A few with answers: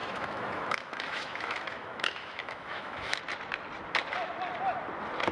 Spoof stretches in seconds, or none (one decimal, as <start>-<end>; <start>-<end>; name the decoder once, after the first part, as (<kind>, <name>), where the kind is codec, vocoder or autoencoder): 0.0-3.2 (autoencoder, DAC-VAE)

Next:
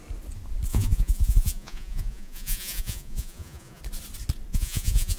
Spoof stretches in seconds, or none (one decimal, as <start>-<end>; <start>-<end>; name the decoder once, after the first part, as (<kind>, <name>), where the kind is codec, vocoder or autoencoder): 0.7-3.8 (vocoder, Vocos); 4.5-5.2

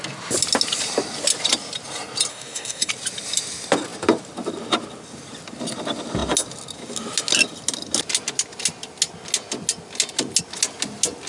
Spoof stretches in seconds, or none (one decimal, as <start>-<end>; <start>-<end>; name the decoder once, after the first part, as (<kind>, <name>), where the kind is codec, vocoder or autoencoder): 2.3-2.9 (codec, DAC)

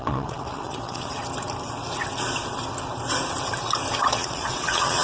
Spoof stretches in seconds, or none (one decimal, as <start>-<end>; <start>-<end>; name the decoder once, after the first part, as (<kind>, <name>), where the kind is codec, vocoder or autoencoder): 0.0-1.2 (vocoder, WaveNeXt); 4.0-5.0

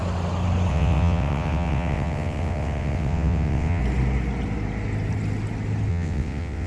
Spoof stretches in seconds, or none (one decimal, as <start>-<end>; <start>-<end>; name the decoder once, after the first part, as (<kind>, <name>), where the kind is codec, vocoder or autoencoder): 0.7-3.8 (vocoder, WaveNeXt); 5.9-6.7